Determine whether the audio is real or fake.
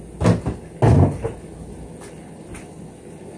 real